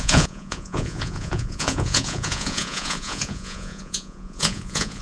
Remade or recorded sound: remade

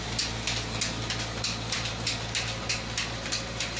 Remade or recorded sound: recorded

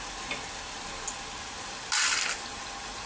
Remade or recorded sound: recorded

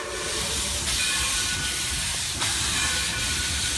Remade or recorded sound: remade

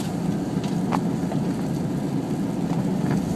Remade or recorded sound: recorded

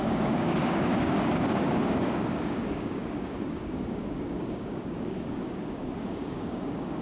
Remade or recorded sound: remade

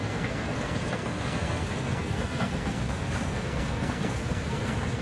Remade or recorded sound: remade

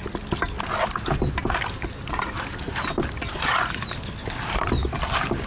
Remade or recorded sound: recorded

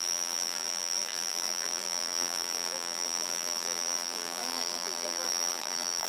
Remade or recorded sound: remade